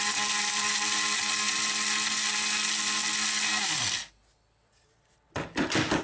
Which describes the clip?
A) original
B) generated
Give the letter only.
A